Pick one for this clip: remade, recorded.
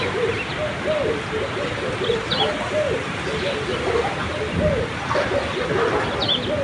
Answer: recorded